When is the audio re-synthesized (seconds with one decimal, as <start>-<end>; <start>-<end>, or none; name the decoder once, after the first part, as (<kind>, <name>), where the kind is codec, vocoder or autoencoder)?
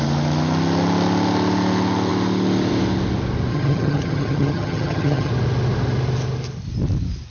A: 3.5-5.3 (vocoder, HiFi-GAN)